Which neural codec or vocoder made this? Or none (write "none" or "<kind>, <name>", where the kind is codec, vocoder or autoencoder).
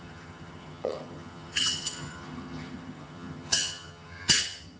vocoder, HiFi-GAN